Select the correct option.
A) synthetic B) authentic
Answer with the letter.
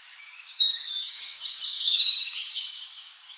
A